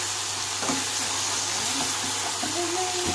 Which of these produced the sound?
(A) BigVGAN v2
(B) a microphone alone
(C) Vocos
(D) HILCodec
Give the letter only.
B